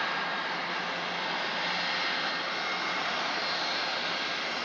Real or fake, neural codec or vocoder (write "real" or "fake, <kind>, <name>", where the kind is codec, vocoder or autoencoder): fake, vocoder, BigVGAN v2